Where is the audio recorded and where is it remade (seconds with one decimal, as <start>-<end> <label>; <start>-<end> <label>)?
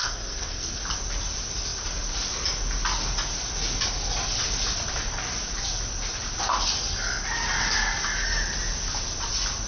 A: 0.0-0.8 remade; 0.8-9.7 recorded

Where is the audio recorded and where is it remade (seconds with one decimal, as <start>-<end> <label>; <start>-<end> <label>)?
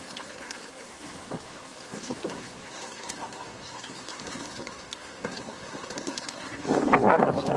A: 0.0-7.6 remade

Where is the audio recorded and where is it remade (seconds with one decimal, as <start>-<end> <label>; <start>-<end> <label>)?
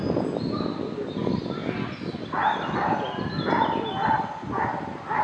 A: 0.0-5.2 recorded